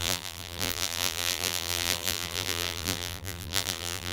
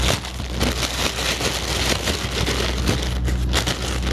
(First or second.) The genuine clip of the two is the second